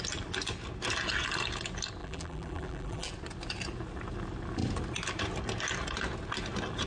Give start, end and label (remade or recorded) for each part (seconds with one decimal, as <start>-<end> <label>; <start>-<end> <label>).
0.0-2.0 recorded; 2.0-3.1 remade; 3.1-6.9 recorded